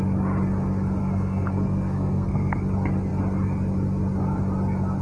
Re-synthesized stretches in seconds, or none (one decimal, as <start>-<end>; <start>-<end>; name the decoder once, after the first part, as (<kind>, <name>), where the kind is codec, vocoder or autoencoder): 1.0-2.6 (codec, SNAC)